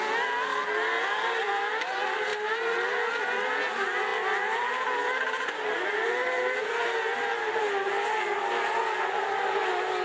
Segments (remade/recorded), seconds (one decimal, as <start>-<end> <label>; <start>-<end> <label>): 0.0-10.0 recorded